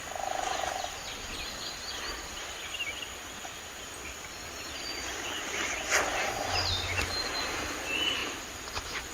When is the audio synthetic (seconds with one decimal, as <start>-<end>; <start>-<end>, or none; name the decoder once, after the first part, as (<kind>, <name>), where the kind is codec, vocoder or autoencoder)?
8.2-9.1 (vocoder, BigVGAN v2)